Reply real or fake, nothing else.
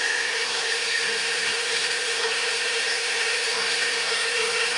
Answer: fake